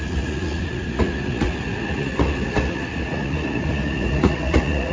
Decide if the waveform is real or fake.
fake